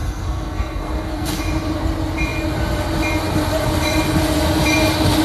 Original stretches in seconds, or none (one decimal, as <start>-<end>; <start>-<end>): 1.4-5.2